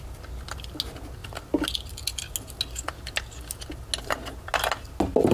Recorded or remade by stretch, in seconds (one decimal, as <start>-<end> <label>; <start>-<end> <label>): 0.0-5.3 recorded